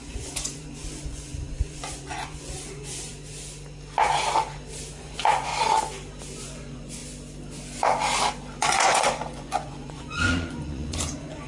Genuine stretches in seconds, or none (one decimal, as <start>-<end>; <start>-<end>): 3.1-4.9; 5.5-6.4; 7.0-8.6